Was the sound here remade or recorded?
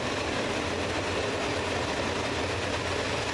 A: recorded